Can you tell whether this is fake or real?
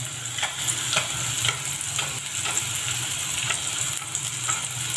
real